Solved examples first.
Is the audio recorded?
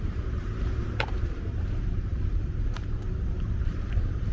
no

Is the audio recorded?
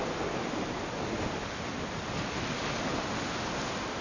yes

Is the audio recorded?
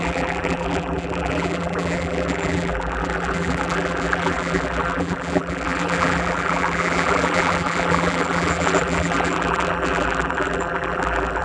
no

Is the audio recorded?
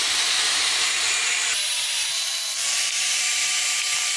no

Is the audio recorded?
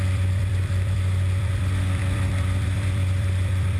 no